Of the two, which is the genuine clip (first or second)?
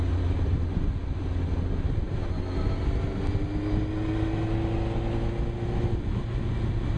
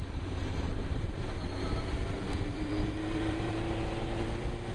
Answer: first